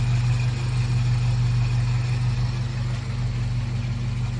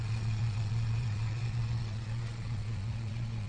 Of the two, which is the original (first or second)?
first